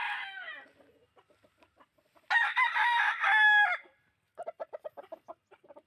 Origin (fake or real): real